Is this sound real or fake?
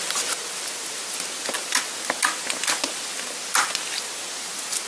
real